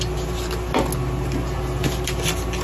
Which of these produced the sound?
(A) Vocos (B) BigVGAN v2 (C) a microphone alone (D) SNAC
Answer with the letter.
C